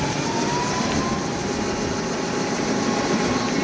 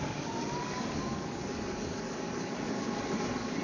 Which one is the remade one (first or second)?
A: second